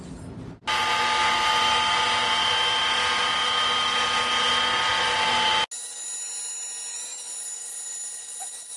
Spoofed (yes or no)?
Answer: no